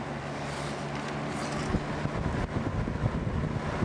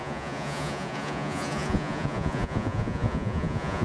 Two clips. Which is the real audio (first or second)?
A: first